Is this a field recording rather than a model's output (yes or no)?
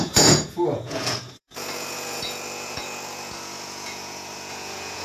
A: no